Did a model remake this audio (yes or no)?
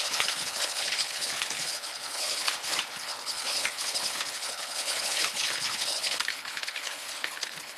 yes